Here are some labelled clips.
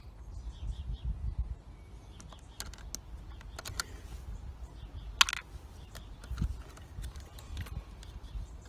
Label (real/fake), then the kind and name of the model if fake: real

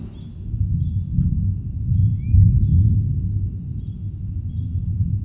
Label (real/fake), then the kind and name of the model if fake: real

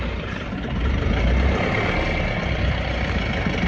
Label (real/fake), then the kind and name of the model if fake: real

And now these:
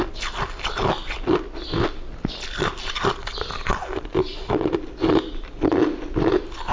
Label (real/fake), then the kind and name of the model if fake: real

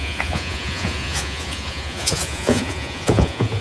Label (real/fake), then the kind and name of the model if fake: fake, vocoder, Vocos